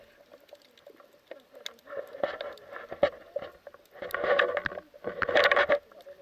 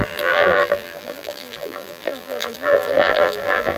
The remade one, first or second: second